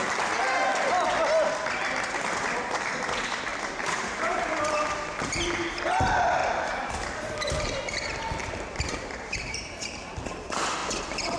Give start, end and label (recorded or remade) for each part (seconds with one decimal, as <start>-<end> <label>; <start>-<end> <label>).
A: 0.0-3.5 recorded; 3.5-4.5 remade; 4.5-6.4 recorded; 6.4-7.8 remade; 7.8-8.4 recorded; 8.4-10.2 remade; 10.2-11.4 recorded